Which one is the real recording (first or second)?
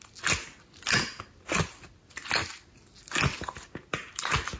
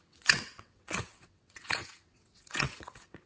first